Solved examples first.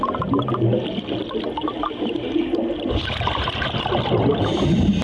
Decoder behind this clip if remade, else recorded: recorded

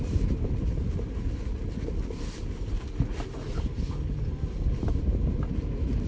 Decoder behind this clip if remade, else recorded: recorded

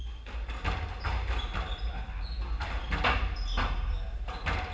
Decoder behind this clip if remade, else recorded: recorded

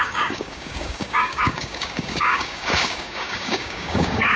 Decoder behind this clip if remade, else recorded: remade, codec, DAC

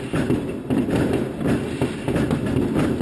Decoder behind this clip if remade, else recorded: recorded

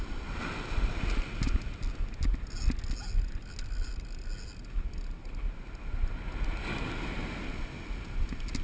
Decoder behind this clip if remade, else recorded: recorded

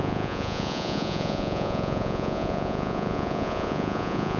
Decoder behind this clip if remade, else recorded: remade, vocoder, Vocos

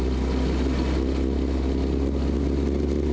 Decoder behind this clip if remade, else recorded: recorded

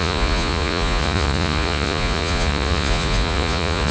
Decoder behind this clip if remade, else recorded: remade, vocoder, Vocos